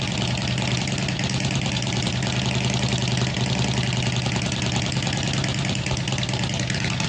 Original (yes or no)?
yes